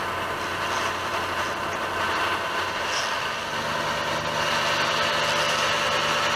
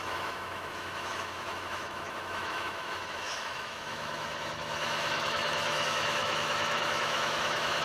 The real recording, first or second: first